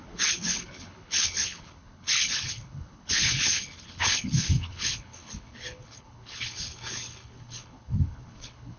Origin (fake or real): fake